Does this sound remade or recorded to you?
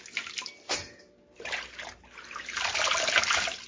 recorded